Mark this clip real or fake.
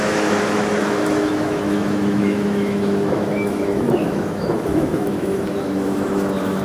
fake